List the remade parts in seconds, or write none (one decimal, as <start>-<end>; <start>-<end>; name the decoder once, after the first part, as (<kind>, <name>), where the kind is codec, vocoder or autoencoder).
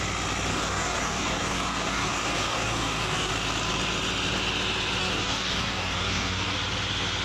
0.5-3.3 (codec, DAC); 5.0-6.5